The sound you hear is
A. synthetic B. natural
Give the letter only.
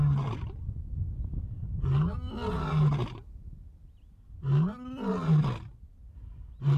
B